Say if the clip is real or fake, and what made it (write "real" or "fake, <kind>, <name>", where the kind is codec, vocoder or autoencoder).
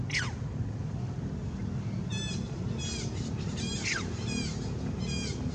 real